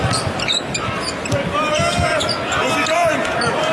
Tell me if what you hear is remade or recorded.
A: recorded